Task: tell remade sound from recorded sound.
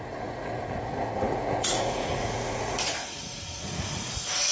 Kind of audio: remade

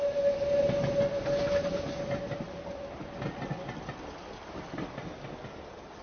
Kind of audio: recorded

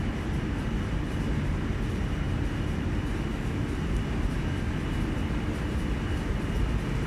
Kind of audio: recorded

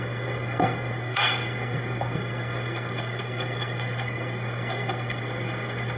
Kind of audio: remade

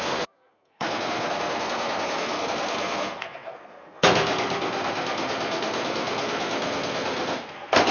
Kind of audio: remade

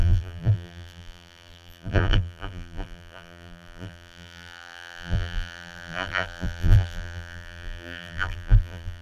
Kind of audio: remade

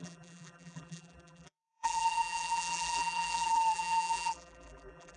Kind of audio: remade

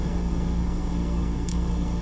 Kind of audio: remade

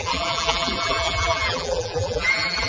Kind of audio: remade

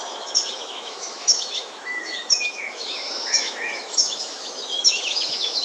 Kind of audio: remade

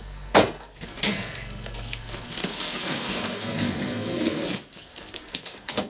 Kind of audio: remade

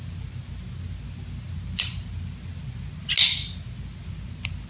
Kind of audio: recorded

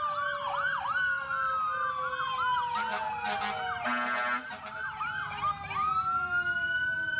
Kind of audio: recorded